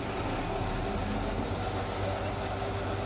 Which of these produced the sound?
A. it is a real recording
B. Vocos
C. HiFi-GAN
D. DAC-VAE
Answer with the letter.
A